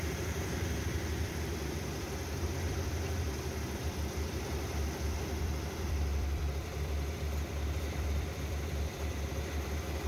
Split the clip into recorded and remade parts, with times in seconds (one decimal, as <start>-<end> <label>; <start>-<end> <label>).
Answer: 0.0-9.3 remade; 9.3-10.1 recorded

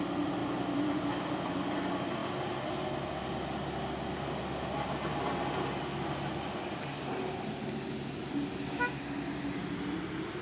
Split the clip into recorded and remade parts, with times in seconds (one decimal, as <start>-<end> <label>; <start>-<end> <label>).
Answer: 0.0-0.4 recorded; 0.4-1.8 remade; 1.8-10.4 recorded

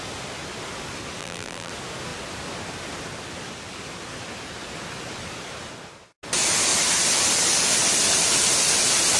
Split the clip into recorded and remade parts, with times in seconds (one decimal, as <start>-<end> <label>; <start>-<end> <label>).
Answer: 0.0-1.2 recorded; 1.2-1.7 remade; 1.7-9.2 recorded

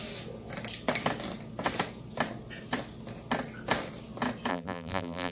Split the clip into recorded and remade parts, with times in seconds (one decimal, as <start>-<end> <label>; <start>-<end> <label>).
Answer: 0.0-4.5 recorded; 4.5-5.3 remade

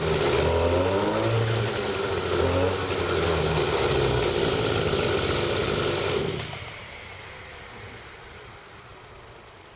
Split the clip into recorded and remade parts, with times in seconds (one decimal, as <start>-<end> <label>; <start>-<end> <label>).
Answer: 0.0-5.6 recorded; 5.6-8.9 remade; 8.9-9.8 recorded